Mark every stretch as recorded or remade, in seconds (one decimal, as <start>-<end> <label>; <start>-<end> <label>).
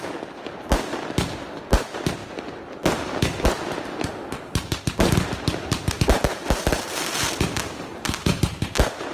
0.0-6.4 recorded; 6.4-7.0 remade; 7.0-9.1 recorded